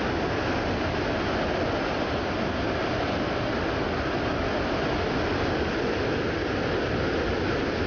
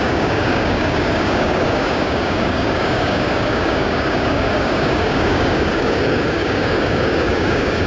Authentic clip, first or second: first